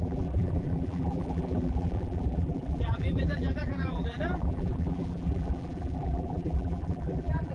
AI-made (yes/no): yes